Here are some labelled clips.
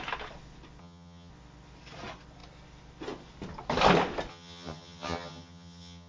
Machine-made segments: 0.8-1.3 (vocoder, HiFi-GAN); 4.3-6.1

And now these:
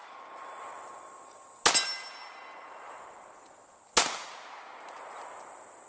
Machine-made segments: none

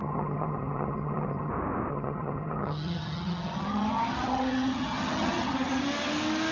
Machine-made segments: 0.0-1.5 (vocoder, HiFi-GAN); 1.9-5.8